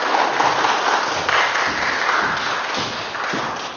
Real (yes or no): yes